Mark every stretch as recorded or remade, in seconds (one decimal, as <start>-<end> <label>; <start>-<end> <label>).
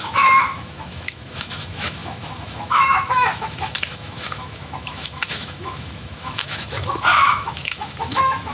0.0-8.5 remade